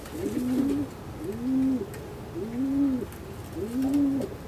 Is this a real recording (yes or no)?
yes